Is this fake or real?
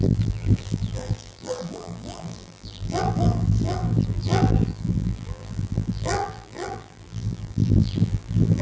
fake